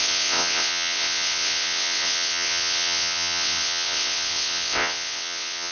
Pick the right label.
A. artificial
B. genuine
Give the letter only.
A